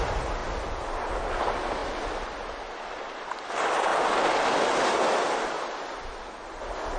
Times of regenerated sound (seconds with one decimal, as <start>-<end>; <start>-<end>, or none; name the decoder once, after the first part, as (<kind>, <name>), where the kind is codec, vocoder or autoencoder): none